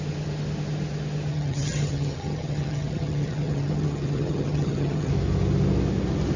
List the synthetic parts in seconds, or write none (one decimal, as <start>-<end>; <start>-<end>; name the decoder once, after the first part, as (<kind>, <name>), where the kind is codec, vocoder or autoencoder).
1.3-5.1 (vocoder, HiFi-GAN)